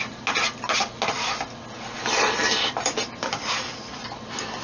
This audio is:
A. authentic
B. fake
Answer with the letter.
A